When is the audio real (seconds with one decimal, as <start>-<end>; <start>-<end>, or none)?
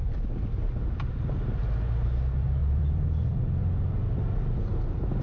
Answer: 0.0-2.6; 3.4-5.2